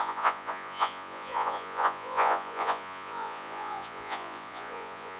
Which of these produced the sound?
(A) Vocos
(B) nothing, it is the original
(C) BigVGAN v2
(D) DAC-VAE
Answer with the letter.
A